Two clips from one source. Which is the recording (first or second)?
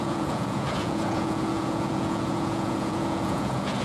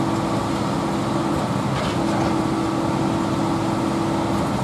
second